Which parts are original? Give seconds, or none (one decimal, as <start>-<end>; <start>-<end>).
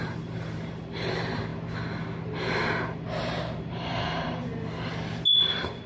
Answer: 1.5-3.2; 4.5-5.5